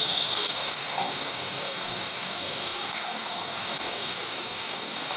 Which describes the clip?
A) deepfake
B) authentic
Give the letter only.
A